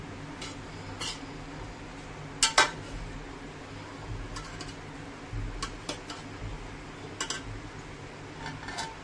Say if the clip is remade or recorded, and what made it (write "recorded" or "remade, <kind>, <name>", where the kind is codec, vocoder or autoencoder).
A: recorded